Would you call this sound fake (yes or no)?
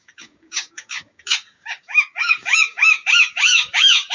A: yes